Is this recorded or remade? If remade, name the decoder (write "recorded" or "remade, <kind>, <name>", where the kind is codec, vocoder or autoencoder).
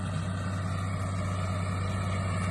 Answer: recorded